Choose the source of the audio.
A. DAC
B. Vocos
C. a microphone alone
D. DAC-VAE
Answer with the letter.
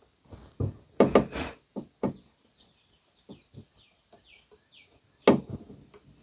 C